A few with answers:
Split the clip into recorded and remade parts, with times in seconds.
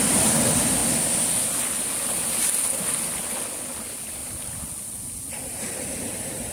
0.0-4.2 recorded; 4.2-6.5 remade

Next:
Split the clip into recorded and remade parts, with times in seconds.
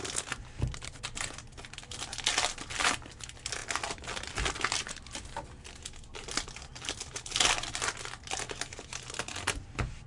0.0-6.7 recorded; 6.7-7.7 remade; 7.7-10.1 recorded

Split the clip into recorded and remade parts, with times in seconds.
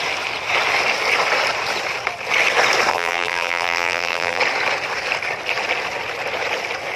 0.0-2.9 recorded; 2.9-4.4 remade; 4.4-7.0 recorded